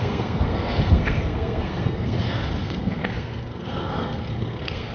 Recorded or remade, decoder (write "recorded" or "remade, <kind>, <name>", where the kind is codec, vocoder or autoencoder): remade, codec, SNAC